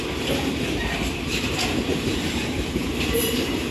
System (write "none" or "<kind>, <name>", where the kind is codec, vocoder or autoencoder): vocoder, BigVGAN v2